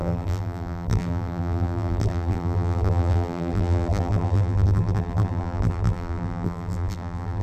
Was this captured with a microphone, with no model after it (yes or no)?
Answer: no